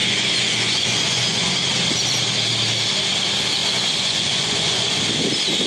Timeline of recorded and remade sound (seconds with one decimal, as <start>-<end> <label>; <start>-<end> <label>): 0.0-1.5 remade; 1.5-3.6 recorded; 3.6-5.0 remade; 5.0-5.7 recorded